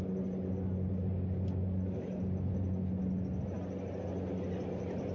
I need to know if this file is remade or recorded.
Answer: recorded